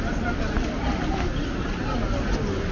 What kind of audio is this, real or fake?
real